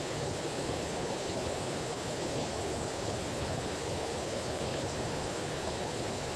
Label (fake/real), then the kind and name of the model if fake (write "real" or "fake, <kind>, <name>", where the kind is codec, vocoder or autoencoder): fake, codec, HILCodec